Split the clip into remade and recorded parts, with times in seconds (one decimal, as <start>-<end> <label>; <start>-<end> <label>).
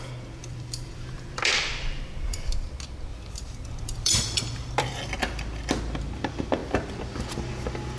0.0-0.4 recorded; 0.4-2.6 remade; 2.6-3.1 recorded; 3.1-5.6 remade; 5.6-8.0 recorded